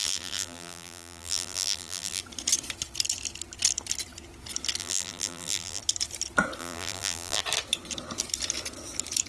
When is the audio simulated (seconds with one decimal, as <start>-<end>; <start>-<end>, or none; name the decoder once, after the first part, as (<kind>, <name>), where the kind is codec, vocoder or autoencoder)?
0.0-2.2 (vocoder, BigVGAN v2); 4.8-5.8; 6.6-7.4